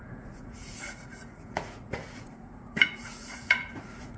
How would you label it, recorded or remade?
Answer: remade